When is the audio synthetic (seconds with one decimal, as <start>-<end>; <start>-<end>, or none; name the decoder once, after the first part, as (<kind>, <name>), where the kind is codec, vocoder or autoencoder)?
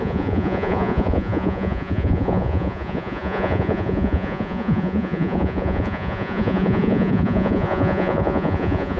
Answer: 0.0-9.0 (vocoder, Vocos)